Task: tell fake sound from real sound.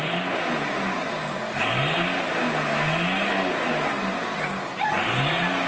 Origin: real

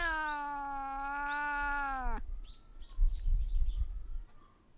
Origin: real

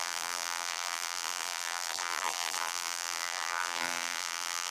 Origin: fake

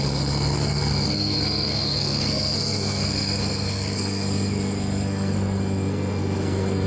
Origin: fake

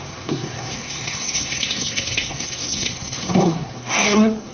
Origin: fake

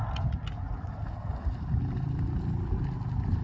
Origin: real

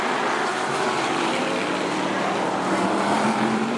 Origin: fake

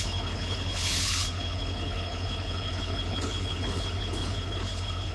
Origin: fake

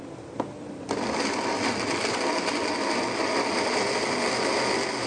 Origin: real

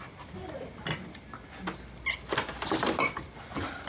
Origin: real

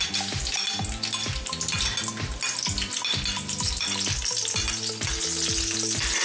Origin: real